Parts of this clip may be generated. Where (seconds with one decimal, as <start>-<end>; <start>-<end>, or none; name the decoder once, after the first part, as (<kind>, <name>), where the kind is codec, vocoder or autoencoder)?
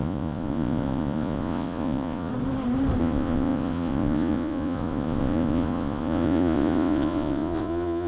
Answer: 0.0-2.3 (vocoder, Vocos); 3.0-8.1